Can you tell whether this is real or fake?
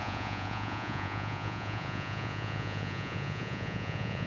fake